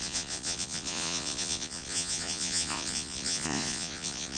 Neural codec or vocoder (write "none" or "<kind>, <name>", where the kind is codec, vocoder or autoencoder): vocoder, Vocos